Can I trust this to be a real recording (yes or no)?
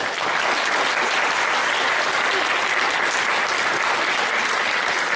no